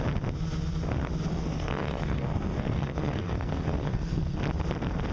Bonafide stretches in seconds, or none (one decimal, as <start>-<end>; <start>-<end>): 0.0-1.3; 4.4-5.1